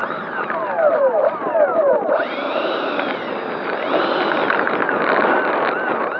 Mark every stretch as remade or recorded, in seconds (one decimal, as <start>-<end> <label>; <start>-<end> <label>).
0.0-3.7 remade; 3.7-6.2 recorded